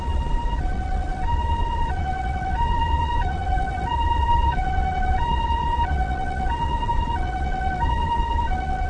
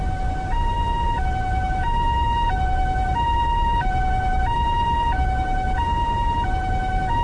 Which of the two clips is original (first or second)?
second